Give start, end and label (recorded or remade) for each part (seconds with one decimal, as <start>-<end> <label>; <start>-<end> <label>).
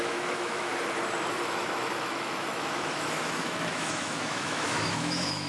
0.0-0.7 remade; 0.7-1.3 recorded; 1.3-5.5 remade